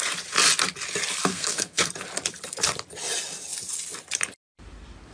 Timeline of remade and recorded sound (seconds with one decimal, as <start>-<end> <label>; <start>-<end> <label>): 0.0-1.3 recorded; 1.3-1.9 remade; 1.9-5.1 recorded